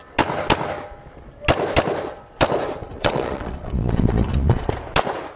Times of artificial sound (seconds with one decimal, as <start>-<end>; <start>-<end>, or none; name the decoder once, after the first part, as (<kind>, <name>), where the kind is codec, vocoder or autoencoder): 2.8-4.7 (vocoder, Vocos)